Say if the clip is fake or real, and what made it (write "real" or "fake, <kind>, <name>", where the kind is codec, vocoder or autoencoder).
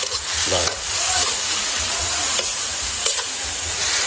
fake, vocoder, Vocos